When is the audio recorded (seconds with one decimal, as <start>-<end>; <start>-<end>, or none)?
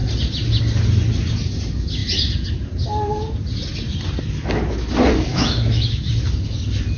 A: 0.0-5.3; 6.1-7.0